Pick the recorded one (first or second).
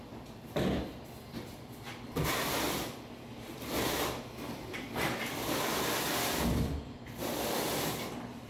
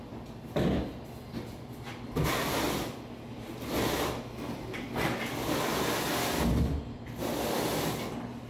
second